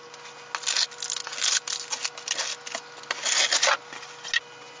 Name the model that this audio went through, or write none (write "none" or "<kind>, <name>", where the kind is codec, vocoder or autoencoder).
none